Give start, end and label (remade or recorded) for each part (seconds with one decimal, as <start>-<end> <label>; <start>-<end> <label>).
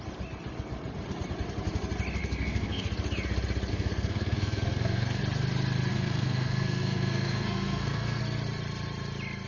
0.0-2.2 recorded; 2.2-2.9 remade; 2.9-3.7 recorded; 3.7-5.2 remade; 5.2-5.9 recorded; 5.9-8.2 remade; 8.2-9.5 recorded